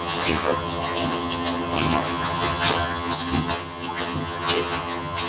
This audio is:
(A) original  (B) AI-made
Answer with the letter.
B